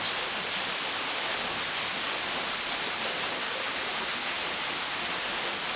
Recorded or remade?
recorded